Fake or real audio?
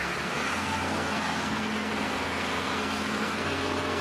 fake